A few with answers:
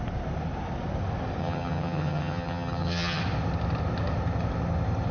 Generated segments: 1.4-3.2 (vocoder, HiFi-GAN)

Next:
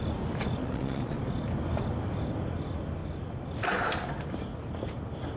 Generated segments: 0.6-1.2 (vocoder, WaveNeXt)